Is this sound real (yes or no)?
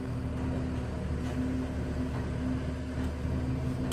yes